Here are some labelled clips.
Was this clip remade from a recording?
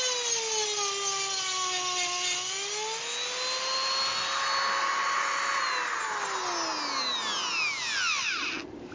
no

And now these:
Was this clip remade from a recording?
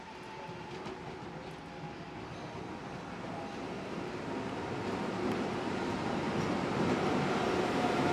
no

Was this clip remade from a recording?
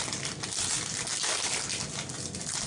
no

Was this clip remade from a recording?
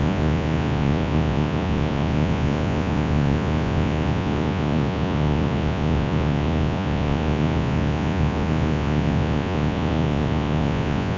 yes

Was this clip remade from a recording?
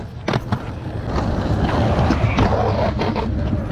no